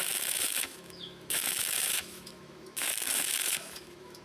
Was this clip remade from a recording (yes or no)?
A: yes